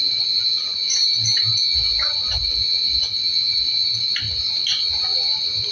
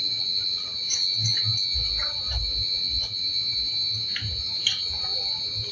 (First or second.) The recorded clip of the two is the second